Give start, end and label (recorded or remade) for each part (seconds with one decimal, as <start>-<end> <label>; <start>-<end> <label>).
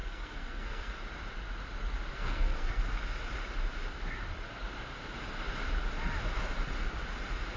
0.0-1.0 remade; 1.0-2.1 recorded; 2.1-2.8 remade; 2.8-7.6 recorded